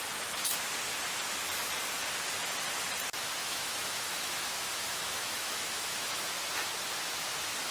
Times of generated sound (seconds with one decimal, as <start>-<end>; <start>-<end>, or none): 3.4-6.3